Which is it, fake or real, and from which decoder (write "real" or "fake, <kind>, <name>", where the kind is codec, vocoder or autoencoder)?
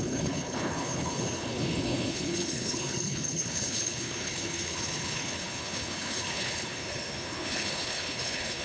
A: fake, codec, HILCodec